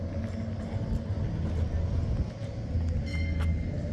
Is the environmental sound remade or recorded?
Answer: recorded